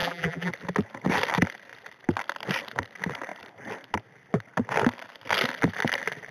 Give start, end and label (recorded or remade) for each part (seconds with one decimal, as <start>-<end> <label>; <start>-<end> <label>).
0.0-0.5 remade; 0.5-6.3 recorded